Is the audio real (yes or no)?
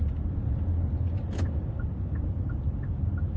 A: yes